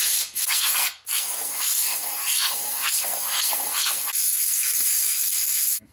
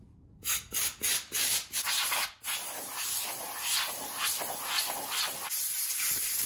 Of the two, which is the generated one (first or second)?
first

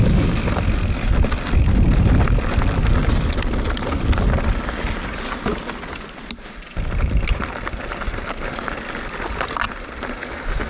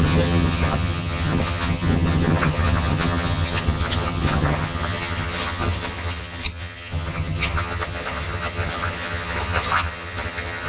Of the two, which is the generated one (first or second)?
second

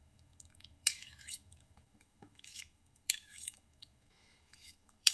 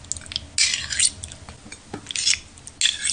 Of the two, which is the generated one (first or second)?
first